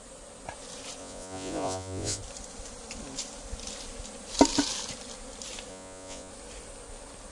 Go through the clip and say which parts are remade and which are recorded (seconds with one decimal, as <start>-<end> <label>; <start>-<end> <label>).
0.0-1.0 recorded; 1.0-2.2 remade; 2.2-5.7 recorded; 5.7-6.3 remade; 6.3-7.3 recorded